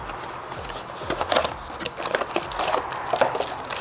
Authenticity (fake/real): real